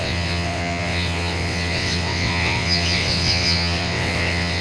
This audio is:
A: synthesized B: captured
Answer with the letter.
A